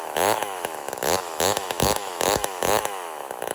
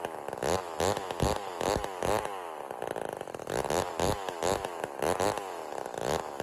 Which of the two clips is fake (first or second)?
first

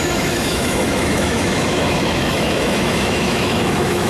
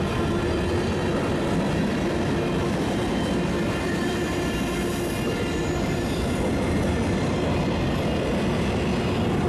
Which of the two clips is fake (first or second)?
first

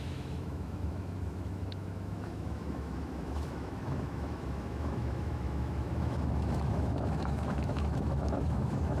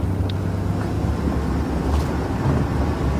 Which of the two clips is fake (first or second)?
first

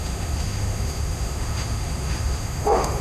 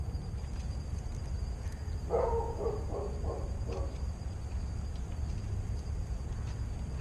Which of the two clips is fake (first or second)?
first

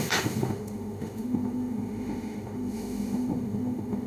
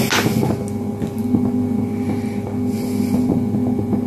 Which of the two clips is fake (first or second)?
first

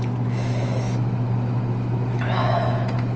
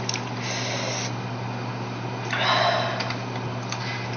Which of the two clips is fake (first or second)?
first